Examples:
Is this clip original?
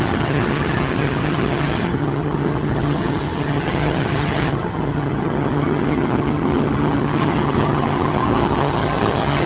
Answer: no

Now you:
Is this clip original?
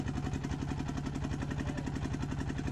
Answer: yes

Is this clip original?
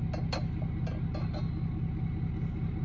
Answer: yes